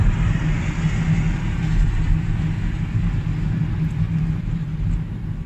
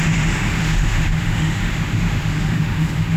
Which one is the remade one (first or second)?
second